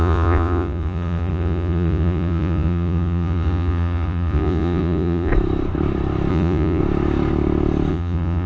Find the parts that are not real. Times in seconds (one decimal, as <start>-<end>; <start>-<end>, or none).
0.0-5.3; 6.3-6.8; 7.9-8.5